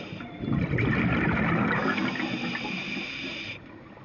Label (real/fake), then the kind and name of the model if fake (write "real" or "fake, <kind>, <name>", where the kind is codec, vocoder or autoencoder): real